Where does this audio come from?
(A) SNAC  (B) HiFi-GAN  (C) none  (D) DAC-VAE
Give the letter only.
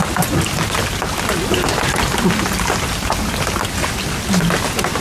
C